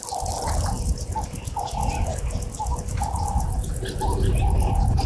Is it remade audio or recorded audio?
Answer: recorded